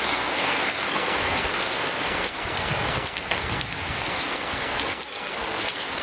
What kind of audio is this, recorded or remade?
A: remade